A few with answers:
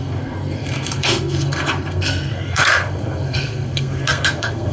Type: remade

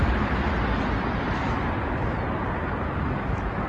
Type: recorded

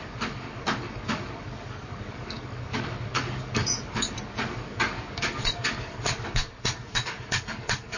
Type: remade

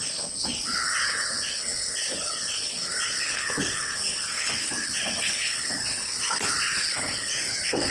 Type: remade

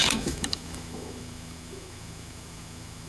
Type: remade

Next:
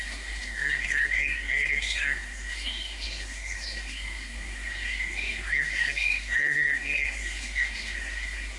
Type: remade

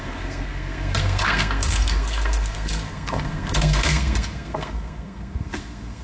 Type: remade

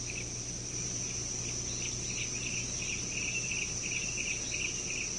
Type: recorded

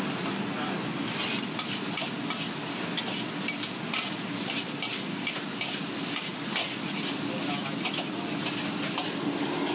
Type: recorded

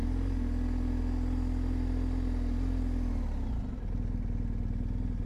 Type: recorded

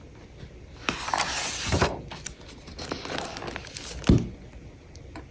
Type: recorded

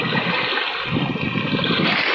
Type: recorded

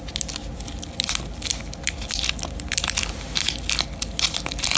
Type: recorded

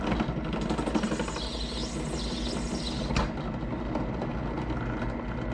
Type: recorded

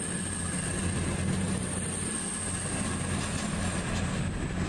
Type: recorded